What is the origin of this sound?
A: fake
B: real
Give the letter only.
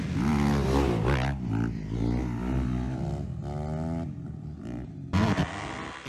B